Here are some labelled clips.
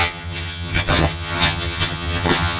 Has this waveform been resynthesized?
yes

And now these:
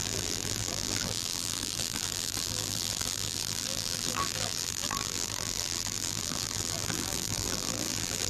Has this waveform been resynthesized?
yes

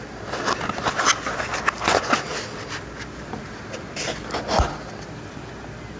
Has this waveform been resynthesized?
no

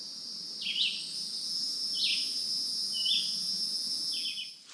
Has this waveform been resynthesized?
no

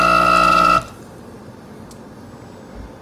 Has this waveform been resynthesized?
no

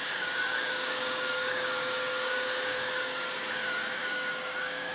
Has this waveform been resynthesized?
yes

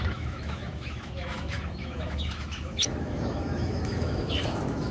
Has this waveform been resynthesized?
yes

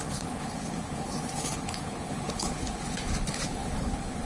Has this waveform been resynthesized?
yes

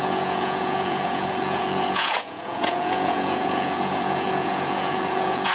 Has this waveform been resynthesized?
yes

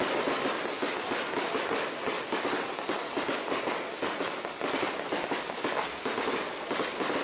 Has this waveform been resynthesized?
no